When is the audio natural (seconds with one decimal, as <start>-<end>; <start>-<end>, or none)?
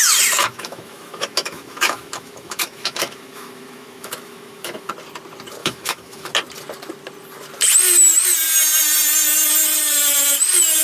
0.0-0.4; 4.9-5.6; 6.3-10.8